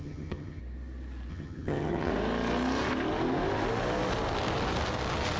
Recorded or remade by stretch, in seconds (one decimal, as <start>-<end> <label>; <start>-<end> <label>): 0.0-0.6 remade; 0.6-1.3 recorded; 1.3-2.1 remade; 2.1-5.4 recorded